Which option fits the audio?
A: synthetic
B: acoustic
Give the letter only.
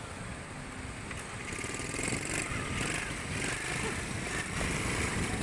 B